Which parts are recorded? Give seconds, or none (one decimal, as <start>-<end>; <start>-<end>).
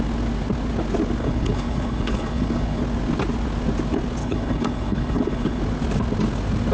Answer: 0.0-1.2; 2.8-4.2; 5.6-6.7